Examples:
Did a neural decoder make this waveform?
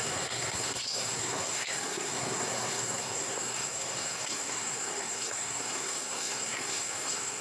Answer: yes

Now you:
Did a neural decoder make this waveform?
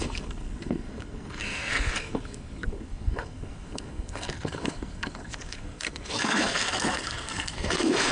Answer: yes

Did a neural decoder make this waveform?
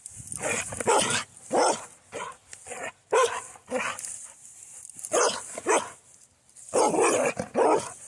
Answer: no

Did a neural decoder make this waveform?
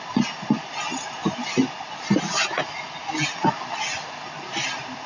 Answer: no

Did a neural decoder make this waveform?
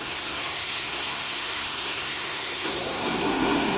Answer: yes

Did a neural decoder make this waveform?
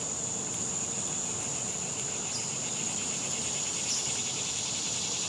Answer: no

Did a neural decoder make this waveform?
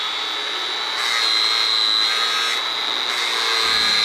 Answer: no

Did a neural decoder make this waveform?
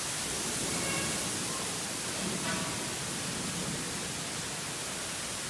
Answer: no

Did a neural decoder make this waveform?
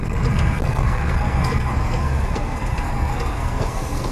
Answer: yes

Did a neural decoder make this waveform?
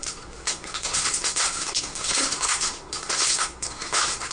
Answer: yes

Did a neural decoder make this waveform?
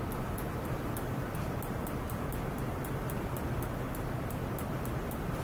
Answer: no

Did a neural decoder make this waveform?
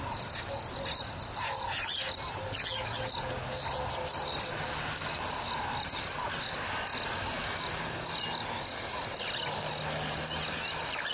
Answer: no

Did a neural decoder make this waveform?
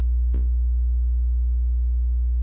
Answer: no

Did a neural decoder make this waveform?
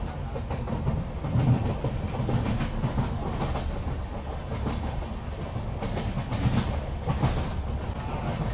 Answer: no